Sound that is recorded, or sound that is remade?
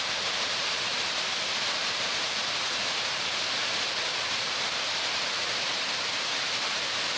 remade